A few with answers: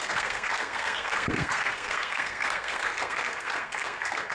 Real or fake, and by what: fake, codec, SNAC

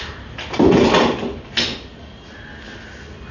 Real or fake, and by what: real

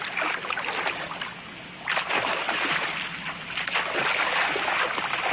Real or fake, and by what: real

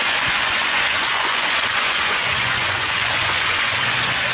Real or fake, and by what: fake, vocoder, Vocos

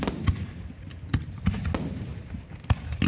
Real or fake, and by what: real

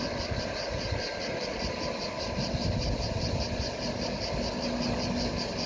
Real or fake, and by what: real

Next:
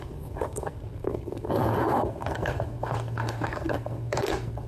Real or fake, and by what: fake, codec, SNAC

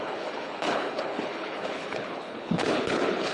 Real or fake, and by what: fake, codec, HILCodec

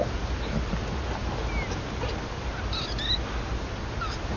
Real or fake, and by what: real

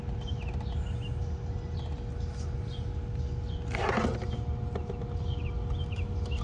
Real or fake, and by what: real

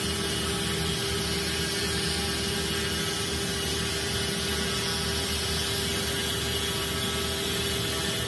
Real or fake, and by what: real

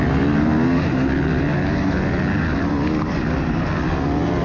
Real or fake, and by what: real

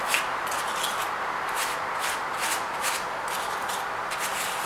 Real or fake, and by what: real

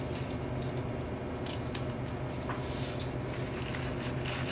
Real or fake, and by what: real